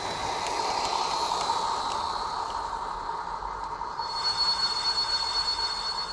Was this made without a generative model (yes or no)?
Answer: yes